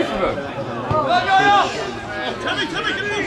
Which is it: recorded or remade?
recorded